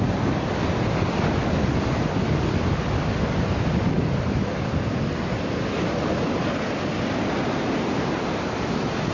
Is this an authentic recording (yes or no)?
yes